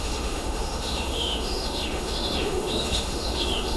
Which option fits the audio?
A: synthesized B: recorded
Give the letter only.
A